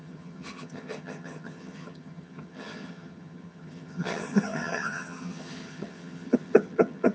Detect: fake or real fake